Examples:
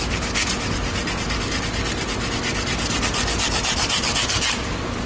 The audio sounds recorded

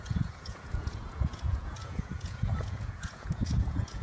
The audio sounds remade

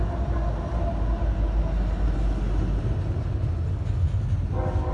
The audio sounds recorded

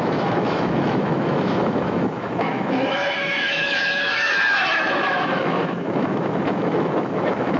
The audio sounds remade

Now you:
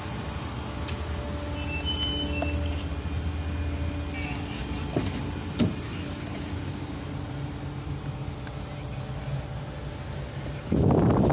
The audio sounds recorded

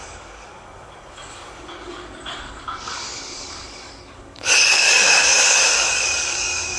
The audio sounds remade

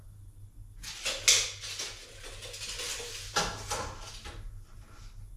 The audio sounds recorded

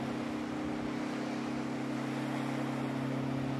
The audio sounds recorded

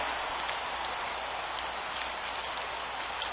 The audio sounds remade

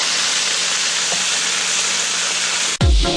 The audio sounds recorded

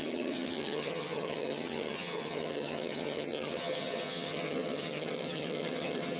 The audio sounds remade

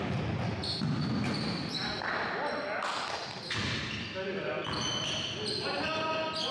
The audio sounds recorded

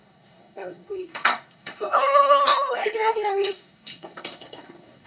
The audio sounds remade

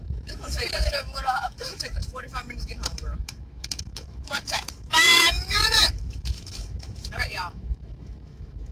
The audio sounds remade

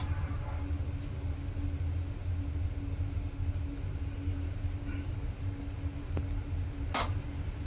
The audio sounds recorded